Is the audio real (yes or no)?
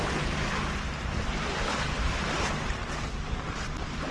yes